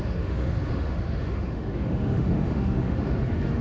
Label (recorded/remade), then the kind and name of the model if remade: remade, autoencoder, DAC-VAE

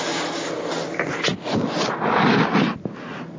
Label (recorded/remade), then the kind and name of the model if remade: recorded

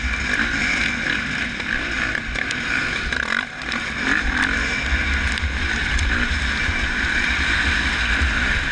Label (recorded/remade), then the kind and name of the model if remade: recorded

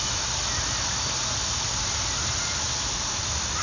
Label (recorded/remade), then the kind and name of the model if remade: recorded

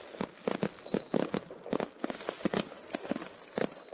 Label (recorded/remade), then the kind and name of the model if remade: recorded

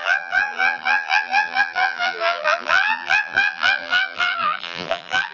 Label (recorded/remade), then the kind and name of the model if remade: remade, vocoder, BigVGAN v2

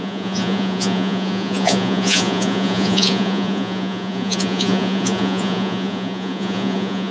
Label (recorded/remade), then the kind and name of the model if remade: remade, vocoder, Vocos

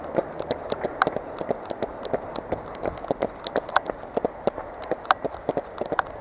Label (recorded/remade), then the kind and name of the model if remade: recorded